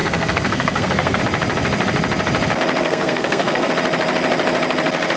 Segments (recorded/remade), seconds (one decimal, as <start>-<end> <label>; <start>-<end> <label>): 0.0-1.2 remade; 1.2-2.8 recorded; 2.8-3.7 remade; 3.7-5.2 recorded